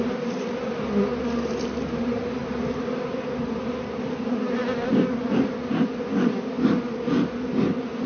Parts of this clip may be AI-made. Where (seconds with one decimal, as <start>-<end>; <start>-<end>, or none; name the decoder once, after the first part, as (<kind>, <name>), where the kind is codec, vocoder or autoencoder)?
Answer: none